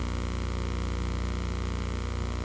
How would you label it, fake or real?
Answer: real